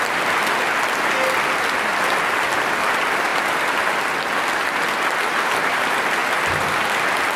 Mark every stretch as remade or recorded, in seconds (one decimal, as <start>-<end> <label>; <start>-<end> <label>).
0.0-7.4 recorded